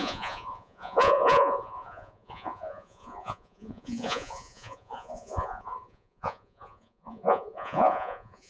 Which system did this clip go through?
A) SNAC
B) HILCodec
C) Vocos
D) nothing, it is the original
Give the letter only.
C